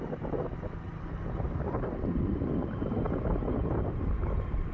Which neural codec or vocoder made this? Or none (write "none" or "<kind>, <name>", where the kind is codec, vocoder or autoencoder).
none